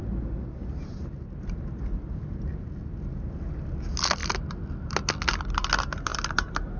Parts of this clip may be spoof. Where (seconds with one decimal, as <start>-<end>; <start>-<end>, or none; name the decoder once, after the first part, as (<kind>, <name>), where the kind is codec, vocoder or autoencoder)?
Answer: none

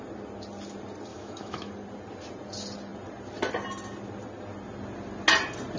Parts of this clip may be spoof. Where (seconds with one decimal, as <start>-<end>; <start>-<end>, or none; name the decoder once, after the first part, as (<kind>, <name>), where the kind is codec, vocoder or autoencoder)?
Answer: 1.1-1.7 (autoencoder, DAC-VAE)

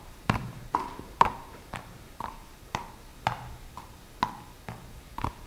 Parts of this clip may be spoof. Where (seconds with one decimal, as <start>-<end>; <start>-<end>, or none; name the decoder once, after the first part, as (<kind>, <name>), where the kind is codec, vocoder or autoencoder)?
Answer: 0.0-3.1 (vocoder, BigVGAN v2); 5.0-5.5

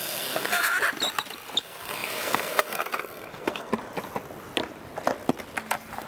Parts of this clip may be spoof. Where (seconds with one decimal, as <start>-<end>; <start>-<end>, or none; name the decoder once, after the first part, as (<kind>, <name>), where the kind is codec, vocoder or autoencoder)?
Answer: 0.0-0.7 (codec, SNAC); 1.6-3.7

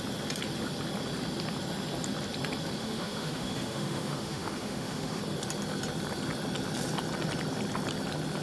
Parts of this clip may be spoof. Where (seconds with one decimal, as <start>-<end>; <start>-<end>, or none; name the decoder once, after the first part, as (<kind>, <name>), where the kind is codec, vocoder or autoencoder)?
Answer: 2.8-5.2 (autoencoder, DAC-VAE)

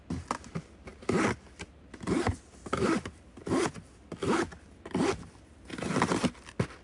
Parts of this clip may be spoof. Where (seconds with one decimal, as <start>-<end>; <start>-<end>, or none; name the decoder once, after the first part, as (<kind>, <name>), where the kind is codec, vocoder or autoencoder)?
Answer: none